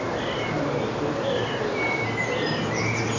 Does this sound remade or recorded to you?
recorded